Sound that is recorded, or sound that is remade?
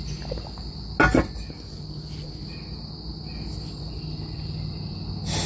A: recorded